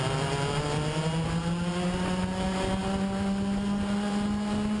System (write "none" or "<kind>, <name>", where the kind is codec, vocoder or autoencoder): none